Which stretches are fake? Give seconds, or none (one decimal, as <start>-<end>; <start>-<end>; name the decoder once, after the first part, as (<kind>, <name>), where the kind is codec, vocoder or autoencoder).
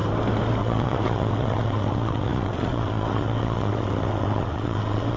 0.6-5.2 (vocoder, WaveNeXt)